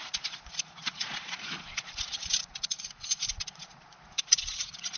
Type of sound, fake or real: fake